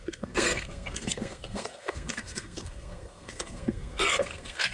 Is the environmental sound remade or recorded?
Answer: remade